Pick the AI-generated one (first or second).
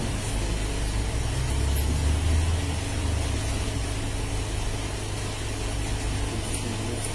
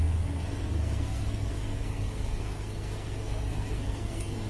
second